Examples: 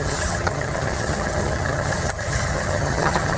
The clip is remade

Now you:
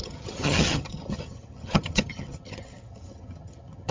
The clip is remade